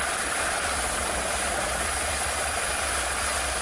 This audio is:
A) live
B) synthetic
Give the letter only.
A